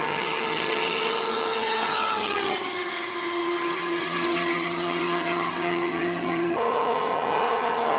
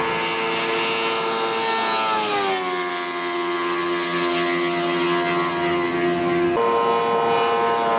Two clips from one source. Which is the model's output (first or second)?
first